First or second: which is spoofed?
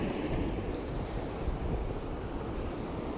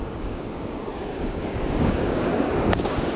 second